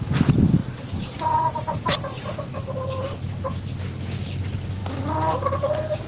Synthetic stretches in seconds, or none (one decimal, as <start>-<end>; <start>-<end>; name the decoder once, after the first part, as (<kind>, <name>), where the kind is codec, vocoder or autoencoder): 0.6-3.7 (vocoder, BigVGAN v2)